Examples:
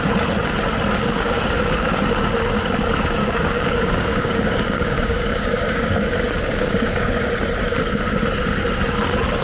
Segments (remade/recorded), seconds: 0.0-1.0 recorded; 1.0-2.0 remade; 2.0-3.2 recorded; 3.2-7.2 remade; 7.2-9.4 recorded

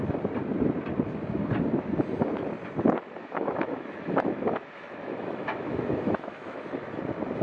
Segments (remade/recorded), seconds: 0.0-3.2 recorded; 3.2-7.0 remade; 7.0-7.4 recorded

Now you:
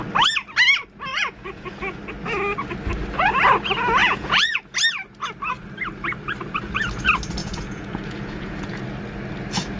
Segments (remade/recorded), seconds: 0.0-1.1 recorded; 1.1-1.8 remade; 1.8-4.0 recorded; 4.0-4.6 remade; 4.6-7.4 recorded; 7.4-8.8 remade; 8.8-9.8 recorded

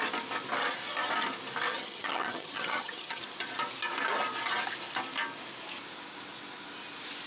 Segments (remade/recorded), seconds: 0.0-1.7 recorded; 1.7-3.2 remade; 3.2-7.3 recorded